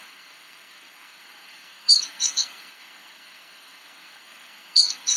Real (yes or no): no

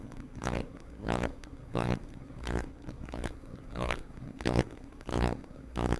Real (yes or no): no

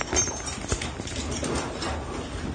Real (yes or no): yes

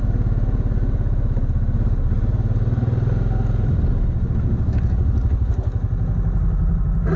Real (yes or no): yes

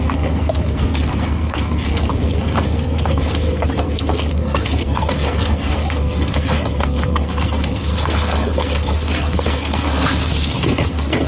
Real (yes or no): no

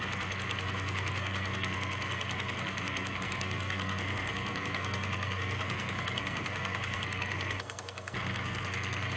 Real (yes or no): no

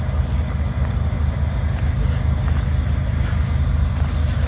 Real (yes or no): yes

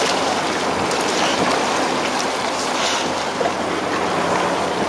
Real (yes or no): yes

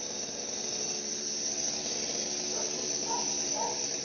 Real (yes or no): yes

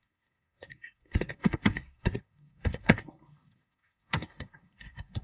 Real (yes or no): no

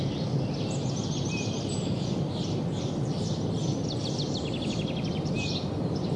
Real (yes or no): yes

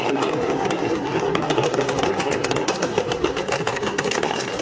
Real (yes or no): no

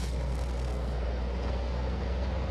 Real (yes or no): no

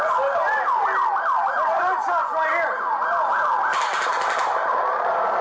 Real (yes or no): yes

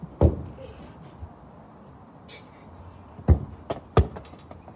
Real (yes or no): yes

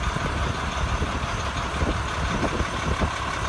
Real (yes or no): yes